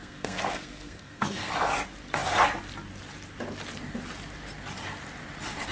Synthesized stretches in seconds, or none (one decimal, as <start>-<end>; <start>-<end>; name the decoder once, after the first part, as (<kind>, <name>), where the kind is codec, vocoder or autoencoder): 0.0-1.5 (codec, SNAC)